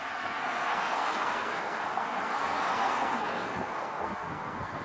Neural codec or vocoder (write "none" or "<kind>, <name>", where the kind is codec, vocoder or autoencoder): codec, SNAC